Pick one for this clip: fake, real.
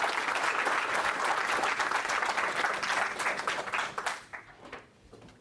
real